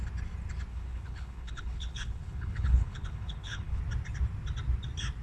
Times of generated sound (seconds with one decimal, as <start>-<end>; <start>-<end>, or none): 0.7-3.8